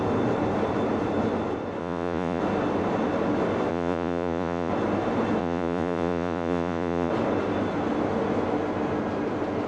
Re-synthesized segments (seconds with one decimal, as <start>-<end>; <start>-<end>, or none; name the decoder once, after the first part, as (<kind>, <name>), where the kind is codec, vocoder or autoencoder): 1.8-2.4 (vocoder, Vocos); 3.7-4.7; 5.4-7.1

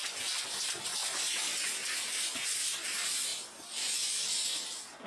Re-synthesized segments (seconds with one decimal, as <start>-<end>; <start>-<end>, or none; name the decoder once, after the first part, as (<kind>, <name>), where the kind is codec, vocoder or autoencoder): 0.0-3.3 (vocoder, BigVGAN v2)

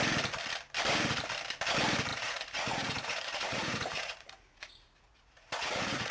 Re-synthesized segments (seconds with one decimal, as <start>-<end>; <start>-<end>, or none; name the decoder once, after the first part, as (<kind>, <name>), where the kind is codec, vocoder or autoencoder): 2.1-6.1 (vocoder, Vocos)

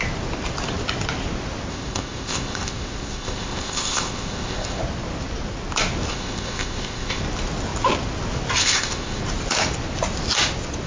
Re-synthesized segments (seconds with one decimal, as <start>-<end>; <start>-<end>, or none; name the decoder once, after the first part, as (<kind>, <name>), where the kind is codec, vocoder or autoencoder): 1.7-4.8 (codec, ZipCodec); 6.1-7.2; 8.6-9.2